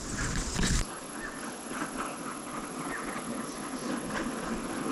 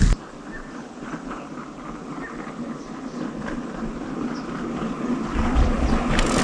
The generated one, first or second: first